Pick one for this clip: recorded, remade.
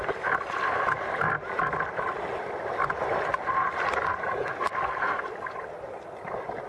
recorded